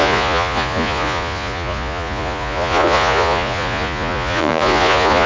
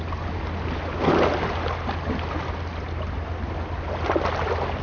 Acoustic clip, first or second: second